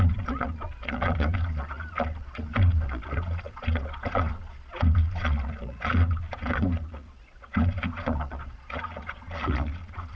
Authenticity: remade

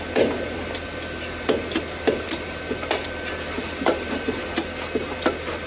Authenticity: recorded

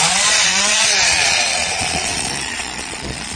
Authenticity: remade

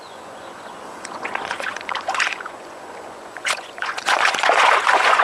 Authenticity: remade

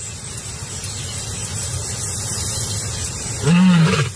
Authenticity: recorded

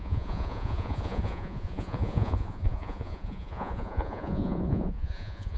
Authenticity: remade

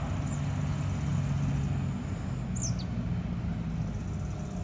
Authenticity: recorded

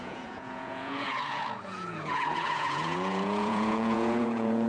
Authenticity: remade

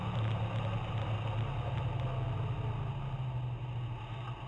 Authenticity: recorded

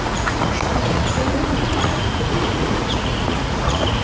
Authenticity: remade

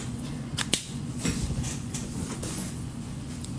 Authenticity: remade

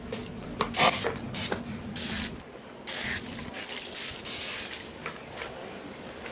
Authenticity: recorded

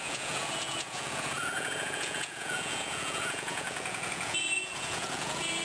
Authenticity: remade